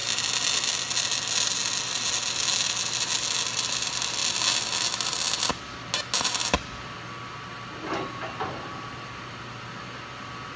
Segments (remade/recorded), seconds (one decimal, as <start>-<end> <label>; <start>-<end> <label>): 0.0-10.6 recorded